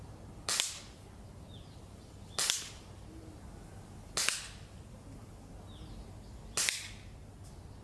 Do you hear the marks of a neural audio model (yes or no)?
no